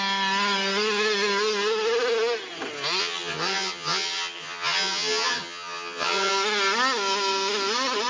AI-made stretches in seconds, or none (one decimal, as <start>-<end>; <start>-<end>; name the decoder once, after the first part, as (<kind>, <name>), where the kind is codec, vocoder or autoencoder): 3.0-6.3 (vocoder, HiFi-GAN)